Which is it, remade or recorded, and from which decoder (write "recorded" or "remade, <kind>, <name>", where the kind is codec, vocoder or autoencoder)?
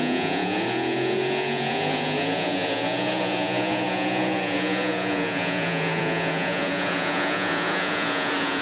remade, vocoder, Vocos